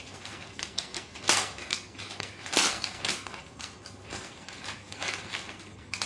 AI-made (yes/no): yes